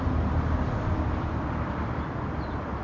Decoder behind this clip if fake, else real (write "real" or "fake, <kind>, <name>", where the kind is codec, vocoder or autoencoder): real